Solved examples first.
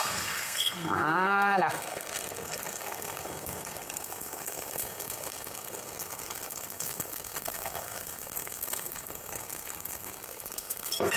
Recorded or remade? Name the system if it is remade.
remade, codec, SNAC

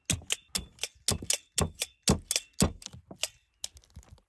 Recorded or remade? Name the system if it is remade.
recorded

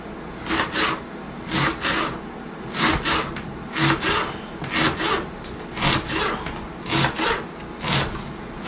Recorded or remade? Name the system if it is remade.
recorded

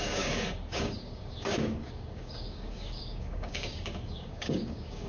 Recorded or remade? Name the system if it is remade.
remade, codec, DAC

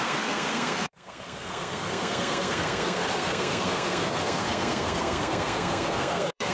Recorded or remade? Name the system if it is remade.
remade, codec, SNAC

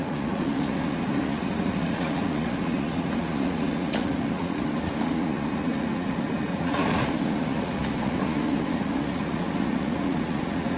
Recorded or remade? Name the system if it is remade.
remade, vocoder, Vocos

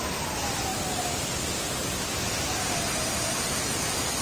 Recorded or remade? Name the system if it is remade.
recorded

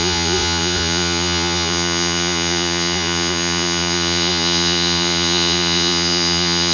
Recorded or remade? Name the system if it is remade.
remade, vocoder, Vocos